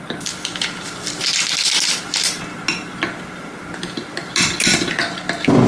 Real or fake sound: real